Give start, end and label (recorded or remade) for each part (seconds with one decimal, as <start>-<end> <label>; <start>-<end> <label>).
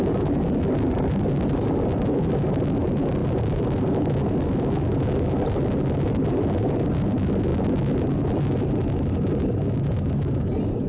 0.0-10.9 recorded